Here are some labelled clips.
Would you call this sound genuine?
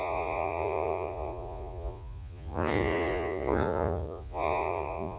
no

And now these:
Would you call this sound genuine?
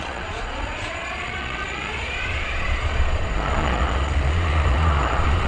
no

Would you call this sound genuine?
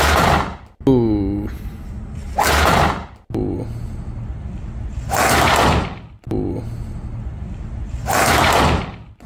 yes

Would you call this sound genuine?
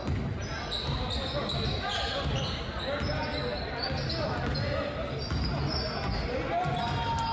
yes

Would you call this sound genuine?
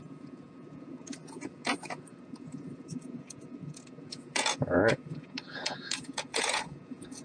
no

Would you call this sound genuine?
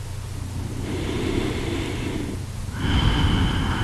yes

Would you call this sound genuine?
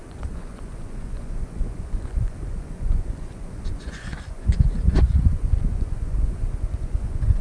no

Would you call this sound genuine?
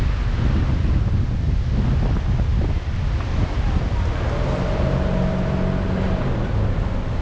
yes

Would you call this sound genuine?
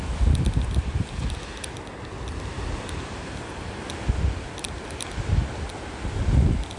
yes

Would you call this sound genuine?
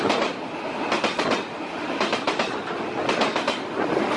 yes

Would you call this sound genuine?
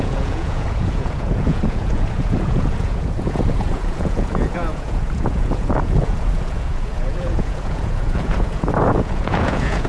no